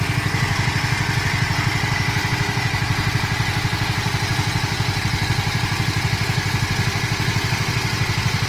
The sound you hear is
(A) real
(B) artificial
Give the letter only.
A